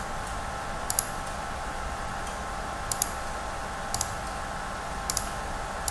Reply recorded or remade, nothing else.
recorded